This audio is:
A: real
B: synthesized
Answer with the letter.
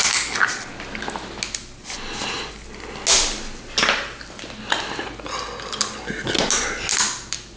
A